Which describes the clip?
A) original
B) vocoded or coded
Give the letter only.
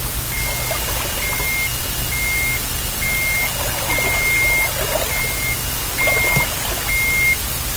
A